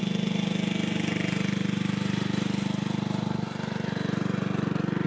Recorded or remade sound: recorded